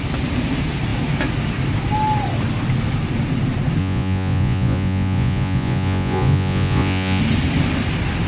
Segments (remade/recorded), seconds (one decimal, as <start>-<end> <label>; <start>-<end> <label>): 0.0-3.8 recorded; 3.8-7.2 remade; 7.2-8.3 recorded